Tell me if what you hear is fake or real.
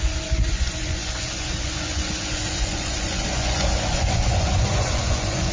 fake